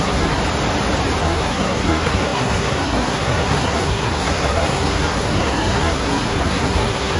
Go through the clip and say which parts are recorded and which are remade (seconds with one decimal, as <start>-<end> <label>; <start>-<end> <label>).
0.0-0.4 remade; 0.4-1.2 recorded; 1.2-7.2 remade